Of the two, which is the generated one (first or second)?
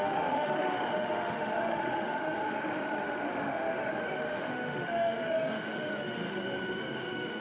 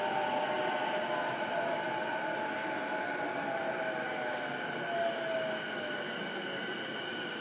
first